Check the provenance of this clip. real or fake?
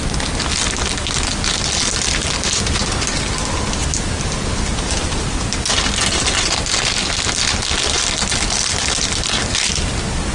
real